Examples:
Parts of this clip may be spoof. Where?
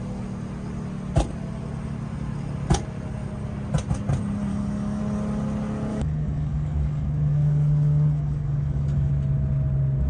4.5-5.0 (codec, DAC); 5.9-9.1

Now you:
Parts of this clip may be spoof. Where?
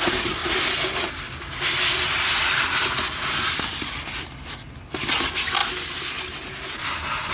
none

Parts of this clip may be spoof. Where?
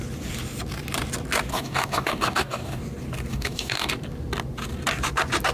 1.5-2.8 (codec, DAC); 3.3-3.9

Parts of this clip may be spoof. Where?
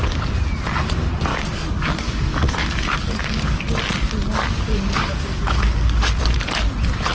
1.3-3.6 (codec, DAC); 4.3-6.2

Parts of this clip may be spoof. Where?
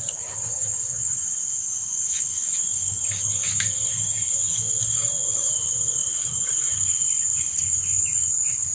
0.0-8.7 (codec, DAC)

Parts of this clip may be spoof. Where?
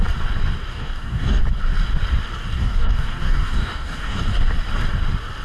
0.7-1.4 (codec, DAC); 2.6-4.2